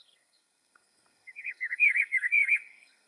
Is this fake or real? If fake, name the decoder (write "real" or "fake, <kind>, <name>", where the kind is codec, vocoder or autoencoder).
fake, codec, SNAC